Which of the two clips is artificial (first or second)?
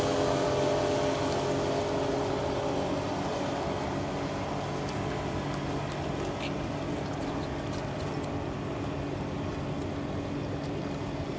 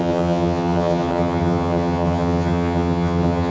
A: second